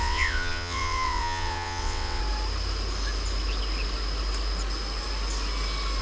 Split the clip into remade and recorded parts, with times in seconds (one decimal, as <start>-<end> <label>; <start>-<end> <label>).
0.0-2.2 remade; 2.2-6.0 recorded